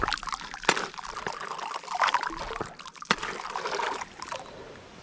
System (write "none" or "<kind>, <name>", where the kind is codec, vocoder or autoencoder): none